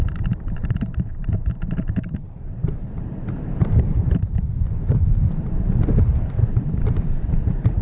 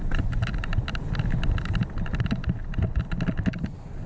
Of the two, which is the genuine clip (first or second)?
second